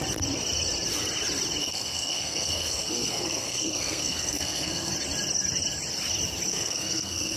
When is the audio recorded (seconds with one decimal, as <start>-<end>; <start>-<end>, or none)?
0.0-1.6; 4.9-6.5